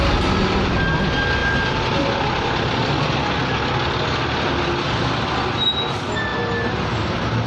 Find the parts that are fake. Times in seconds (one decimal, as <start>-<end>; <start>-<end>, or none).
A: none